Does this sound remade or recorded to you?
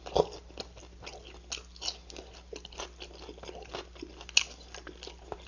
recorded